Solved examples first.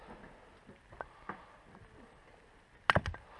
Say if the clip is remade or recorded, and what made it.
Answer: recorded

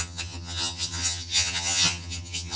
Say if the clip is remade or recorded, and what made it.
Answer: remade, vocoder, HiFi-GAN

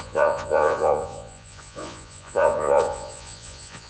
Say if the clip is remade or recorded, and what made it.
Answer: remade, vocoder, Vocos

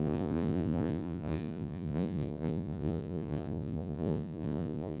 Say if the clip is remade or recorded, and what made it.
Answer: remade, vocoder, Vocos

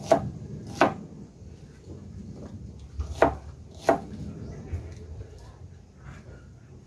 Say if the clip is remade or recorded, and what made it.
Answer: recorded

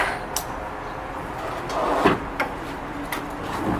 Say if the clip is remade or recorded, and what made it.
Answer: recorded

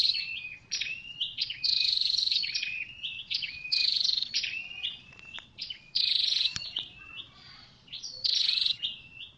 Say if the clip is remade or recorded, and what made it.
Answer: remade, vocoder, Vocos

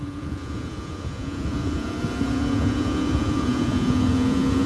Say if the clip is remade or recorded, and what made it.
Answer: remade, vocoder, Vocos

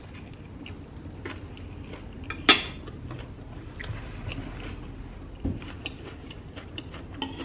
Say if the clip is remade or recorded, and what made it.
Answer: recorded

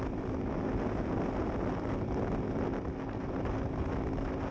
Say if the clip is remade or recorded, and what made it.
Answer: recorded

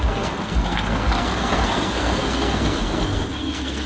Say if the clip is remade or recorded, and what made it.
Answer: remade, codec, SNAC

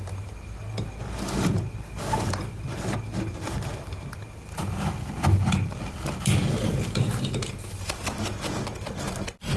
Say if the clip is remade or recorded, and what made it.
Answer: recorded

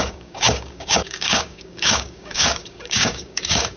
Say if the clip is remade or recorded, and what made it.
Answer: remade, codec, DAC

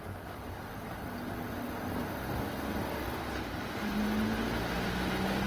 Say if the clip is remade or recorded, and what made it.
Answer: recorded